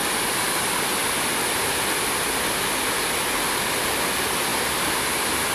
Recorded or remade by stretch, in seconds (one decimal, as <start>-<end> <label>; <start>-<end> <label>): 0.0-5.5 recorded